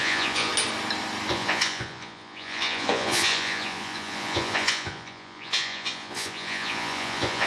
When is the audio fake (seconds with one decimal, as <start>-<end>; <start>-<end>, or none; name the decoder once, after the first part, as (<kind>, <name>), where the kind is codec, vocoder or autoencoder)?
0.0-0.5 (vocoder, Vocos); 1.3-7.5

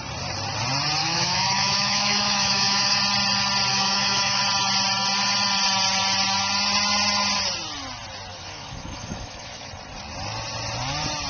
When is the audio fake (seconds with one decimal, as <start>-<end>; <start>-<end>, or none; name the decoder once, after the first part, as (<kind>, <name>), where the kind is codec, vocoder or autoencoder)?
1.0-3.0 (autoencoder, DAC-VAE); 3.7-4.4; 8.3-9.7

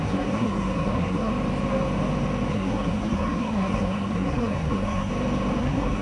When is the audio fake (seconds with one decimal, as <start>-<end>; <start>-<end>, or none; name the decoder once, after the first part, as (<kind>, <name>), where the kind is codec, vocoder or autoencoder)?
0.0-1.3 (codec, SNAC); 2.5-5.1; 5.6-6.0

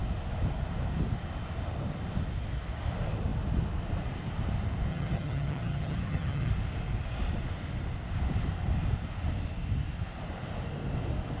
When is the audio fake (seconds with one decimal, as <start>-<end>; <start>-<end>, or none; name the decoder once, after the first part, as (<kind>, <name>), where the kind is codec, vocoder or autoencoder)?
4.9-6.5 (vocoder, HiFi-GAN)

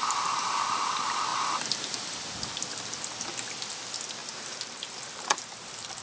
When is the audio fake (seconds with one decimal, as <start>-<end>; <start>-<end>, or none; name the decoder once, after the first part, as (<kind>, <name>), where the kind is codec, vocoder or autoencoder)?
4.2-5.0 (vocoder, BigVGAN v2)

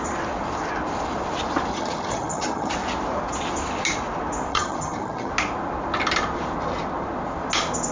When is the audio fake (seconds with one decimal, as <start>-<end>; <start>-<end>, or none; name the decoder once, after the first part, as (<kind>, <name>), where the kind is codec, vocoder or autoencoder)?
1.7-2.7 (vocoder, HiFi-GAN); 4.5-5.3

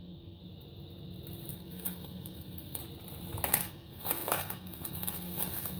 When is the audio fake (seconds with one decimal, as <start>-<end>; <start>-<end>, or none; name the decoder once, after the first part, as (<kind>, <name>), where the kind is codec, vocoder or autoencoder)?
0.0-0.4 (codec, SNAC); 1.5-2.8; 3.5-5.8